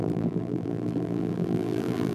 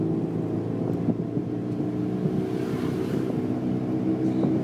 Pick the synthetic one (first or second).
first